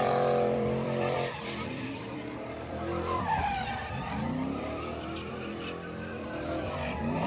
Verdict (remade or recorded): remade